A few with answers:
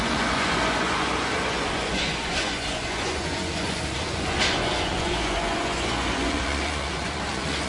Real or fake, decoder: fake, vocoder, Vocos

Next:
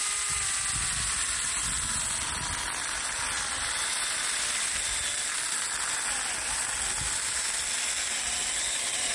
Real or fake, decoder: real